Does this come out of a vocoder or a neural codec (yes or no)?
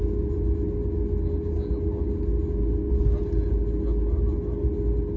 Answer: no